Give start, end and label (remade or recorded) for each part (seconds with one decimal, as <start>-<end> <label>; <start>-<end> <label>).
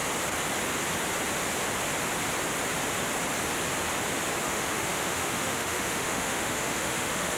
0.0-4.4 recorded; 4.4-7.4 remade